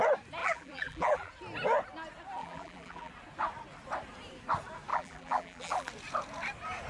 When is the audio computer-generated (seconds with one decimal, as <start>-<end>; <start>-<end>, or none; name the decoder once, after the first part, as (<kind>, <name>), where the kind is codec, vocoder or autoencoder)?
0.4-1.3 (vocoder, BigVGAN v2); 2.4-3.1; 4.9-5.9